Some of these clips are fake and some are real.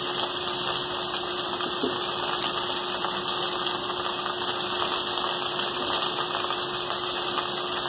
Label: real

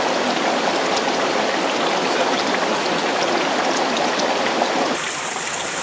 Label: real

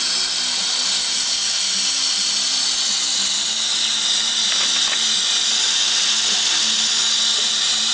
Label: real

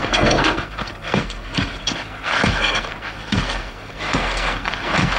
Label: fake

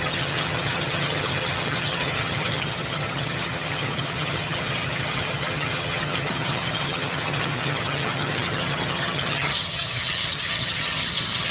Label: fake